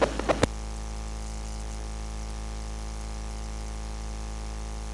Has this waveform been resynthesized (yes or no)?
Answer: no